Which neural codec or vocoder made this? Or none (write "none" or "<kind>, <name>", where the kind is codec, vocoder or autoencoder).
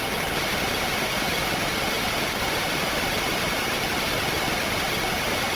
none